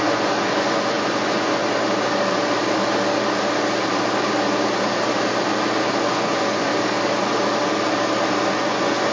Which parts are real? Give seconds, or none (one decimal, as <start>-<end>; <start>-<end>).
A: 1.6-6.0; 6.7-8.5